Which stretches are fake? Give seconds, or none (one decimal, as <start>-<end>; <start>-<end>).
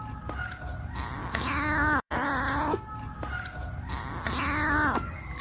1.2-2.1